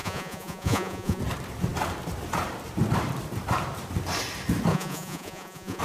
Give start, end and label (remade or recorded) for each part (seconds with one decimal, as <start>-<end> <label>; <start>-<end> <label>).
0.0-1.2 remade; 1.2-4.7 recorded; 4.7-5.8 remade